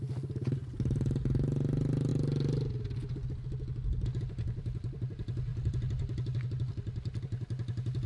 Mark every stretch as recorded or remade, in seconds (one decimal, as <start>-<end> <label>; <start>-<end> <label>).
0.0-8.1 recorded